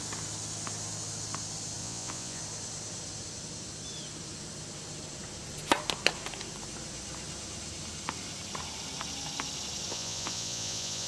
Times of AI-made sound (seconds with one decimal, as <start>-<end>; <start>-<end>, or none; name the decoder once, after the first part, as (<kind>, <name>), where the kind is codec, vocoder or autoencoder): 1.8-2.4 (vocoder, Vocos); 9.9-11.1